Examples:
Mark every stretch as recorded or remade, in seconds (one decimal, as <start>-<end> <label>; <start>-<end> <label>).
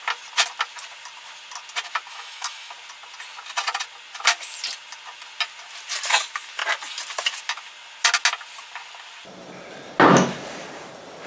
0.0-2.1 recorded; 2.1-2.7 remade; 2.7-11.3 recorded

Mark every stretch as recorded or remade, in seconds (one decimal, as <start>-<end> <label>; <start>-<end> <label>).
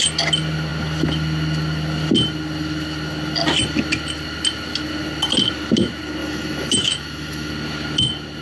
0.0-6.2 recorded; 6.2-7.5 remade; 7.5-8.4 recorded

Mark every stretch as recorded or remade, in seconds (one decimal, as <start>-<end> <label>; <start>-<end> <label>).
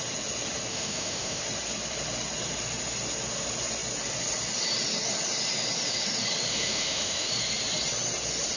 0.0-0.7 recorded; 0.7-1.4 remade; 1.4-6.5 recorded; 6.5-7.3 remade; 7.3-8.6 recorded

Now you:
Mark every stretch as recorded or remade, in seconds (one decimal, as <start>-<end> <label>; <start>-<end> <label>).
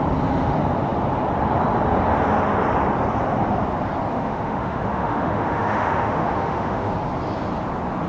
0.0-4.1 recorded; 4.1-6.9 remade; 6.9-8.1 recorded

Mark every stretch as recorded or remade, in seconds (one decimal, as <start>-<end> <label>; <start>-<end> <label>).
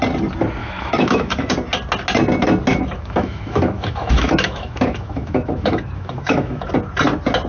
0.0-0.6 recorded; 0.6-1.5 remade; 1.5-2.7 recorded; 2.7-6.7 remade; 6.7-7.5 recorded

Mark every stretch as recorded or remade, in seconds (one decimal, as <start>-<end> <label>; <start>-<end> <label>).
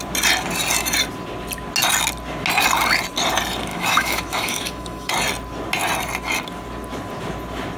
0.0-3.7 recorded; 3.7-5.1 remade; 5.1-7.8 recorded